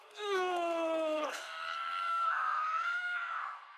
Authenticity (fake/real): fake